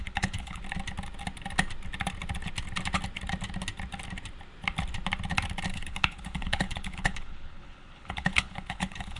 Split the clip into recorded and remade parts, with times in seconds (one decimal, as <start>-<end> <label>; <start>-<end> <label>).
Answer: 0.0-0.6 remade; 0.6-5.7 recorded; 5.7-9.2 remade